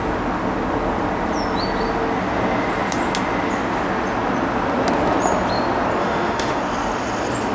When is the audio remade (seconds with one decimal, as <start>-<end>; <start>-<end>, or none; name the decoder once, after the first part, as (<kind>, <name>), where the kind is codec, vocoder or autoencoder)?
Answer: 6.0-6.6 (autoencoder, DAC-VAE)